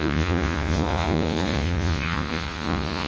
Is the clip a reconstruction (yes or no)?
yes